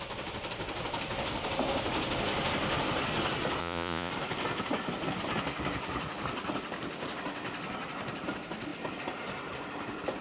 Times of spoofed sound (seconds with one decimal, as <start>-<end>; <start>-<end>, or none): 3.6-4.1